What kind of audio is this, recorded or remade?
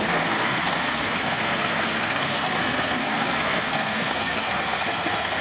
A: remade